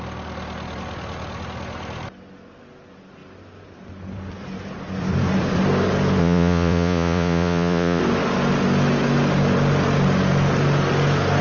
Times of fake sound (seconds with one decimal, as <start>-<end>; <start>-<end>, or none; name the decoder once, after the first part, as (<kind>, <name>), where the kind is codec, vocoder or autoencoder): 6.2-8.0 (vocoder, Vocos)